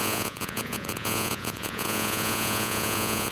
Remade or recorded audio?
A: remade